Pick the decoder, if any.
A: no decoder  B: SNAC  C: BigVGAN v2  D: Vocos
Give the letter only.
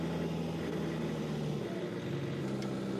A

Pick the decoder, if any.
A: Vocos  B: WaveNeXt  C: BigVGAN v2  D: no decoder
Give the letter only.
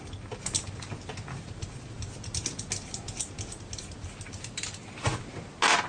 D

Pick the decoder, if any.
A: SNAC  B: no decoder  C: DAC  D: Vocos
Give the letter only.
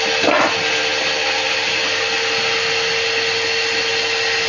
B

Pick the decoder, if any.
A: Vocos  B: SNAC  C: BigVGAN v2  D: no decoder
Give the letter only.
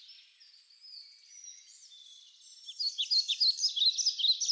D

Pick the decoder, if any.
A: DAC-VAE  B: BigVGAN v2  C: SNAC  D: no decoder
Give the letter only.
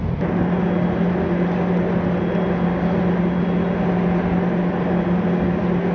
D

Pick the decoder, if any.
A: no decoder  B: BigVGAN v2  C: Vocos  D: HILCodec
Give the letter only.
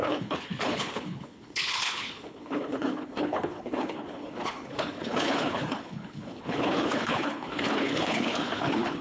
D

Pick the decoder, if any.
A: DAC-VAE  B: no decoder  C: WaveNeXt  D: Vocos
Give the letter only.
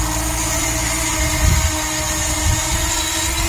B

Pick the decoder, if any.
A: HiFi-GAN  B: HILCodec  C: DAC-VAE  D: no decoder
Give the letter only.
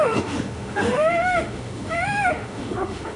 C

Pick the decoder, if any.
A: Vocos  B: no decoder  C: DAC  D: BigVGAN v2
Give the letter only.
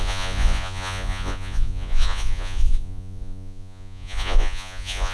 A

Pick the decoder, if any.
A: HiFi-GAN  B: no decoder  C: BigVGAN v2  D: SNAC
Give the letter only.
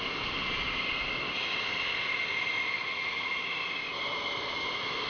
B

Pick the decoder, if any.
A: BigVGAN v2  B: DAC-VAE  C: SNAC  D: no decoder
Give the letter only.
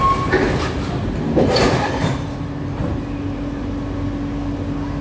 D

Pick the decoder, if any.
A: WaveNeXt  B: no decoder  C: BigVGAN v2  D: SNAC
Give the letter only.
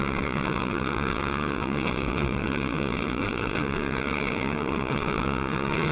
A